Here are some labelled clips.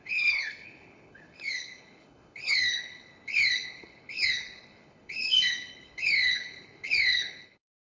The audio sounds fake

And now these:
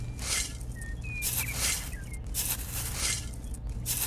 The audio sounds real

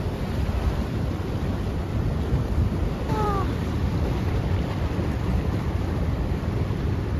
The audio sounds fake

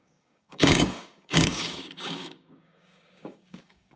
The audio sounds fake